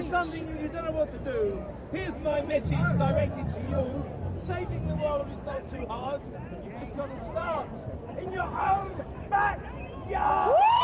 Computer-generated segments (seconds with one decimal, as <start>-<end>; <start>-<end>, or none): 2.2-4.2; 5.2-5.9; 7.4-9.0